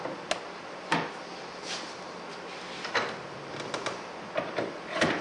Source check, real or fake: real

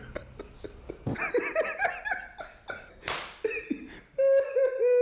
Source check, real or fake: real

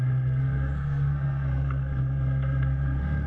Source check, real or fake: fake